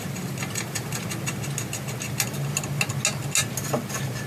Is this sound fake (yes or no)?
no